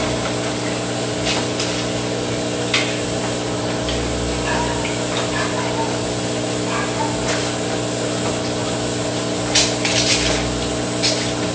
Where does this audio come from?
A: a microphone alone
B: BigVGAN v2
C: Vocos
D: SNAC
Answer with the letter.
A